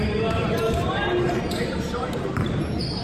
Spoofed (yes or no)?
yes